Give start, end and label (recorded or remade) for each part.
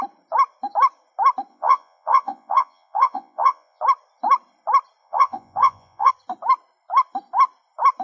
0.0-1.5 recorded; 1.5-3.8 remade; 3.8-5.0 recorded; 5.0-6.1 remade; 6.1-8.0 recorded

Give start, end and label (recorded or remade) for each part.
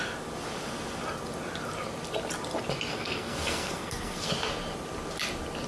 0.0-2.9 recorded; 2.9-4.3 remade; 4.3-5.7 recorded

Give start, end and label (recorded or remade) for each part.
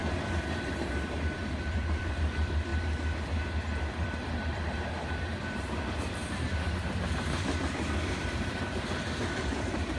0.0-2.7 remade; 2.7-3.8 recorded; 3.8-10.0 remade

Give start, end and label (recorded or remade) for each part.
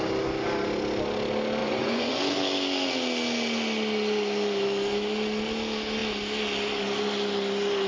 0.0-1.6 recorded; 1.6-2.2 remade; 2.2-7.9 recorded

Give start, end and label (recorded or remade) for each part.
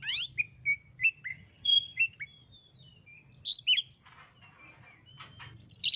0.0-1.3 recorded; 1.3-2.0 remade; 2.0-6.0 recorded